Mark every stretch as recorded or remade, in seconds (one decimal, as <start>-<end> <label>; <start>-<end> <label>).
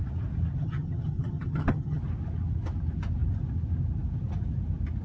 0.0-0.6 recorded; 0.6-2.0 remade; 2.0-5.0 recorded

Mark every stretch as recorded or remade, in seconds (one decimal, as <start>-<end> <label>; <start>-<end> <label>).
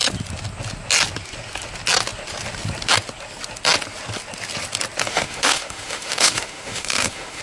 0.0-5.1 recorded; 5.1-7.4 remade